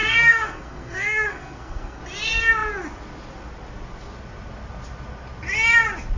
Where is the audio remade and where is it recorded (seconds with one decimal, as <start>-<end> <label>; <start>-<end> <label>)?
0.0-2.0 remade; 2.0-6.2 recorded